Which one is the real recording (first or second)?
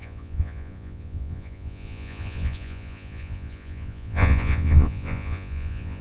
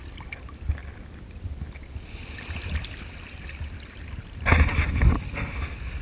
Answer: second